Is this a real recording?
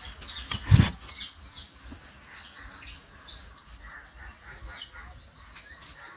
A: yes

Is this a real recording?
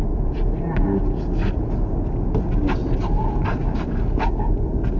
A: yes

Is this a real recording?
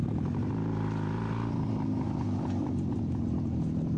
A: no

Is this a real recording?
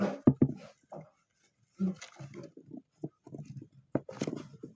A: yes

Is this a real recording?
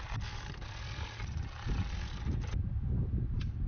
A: yes